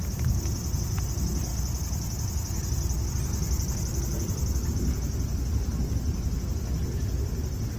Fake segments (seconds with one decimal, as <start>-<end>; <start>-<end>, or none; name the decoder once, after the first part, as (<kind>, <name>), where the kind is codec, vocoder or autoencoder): none